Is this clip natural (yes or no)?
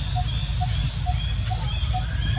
yes